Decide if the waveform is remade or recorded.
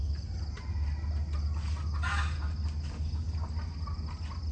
recorded